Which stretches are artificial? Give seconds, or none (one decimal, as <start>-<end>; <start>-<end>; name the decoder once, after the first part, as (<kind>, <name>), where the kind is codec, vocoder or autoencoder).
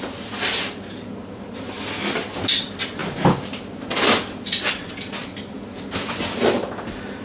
none